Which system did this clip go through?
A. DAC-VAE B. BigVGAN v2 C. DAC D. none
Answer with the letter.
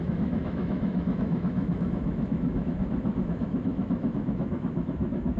A